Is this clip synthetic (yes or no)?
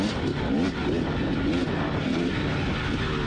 no